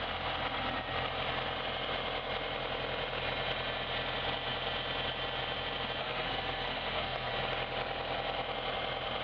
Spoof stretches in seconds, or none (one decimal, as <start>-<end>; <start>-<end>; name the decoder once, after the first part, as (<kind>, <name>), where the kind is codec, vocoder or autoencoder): 6.0-7.3 (codec, SNAC)